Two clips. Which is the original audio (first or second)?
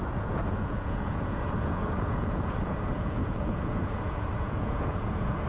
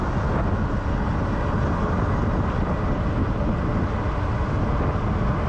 second